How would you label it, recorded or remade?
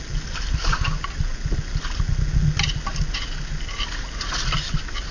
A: recorded